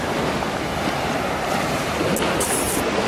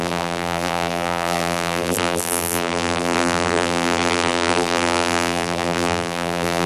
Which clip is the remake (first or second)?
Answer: second